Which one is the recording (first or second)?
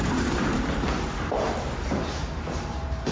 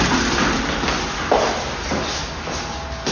second